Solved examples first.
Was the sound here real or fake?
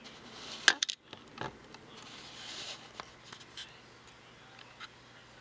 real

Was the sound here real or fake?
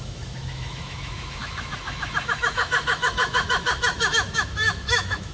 fake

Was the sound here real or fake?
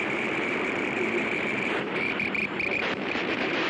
fake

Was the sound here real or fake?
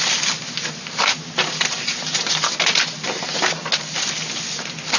real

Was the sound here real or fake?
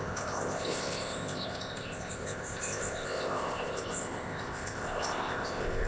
fake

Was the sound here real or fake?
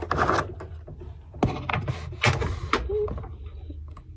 real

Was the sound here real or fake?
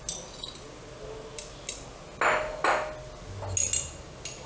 real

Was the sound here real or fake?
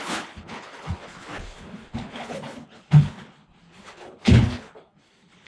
fake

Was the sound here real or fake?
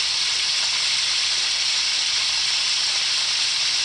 real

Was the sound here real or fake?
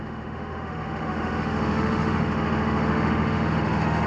fake